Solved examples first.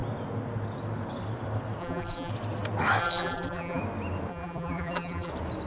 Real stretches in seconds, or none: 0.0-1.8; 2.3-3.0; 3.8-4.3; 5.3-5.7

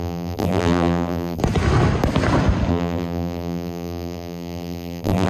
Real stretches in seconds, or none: 1.4-2.7